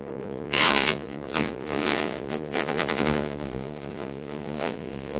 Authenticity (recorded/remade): remade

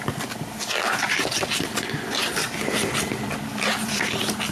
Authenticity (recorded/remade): recorded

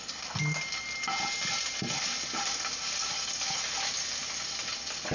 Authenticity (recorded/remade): recorded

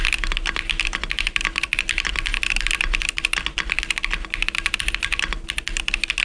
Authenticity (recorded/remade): recorded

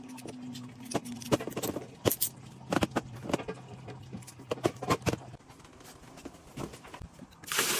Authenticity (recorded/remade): recorded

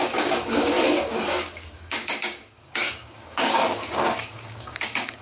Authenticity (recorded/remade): remade